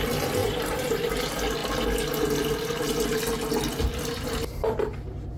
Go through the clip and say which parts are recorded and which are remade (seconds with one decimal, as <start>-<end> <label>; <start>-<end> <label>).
0.0-0.4 recorded; 0.4-1.2 remade; 1.2-5.4 recorded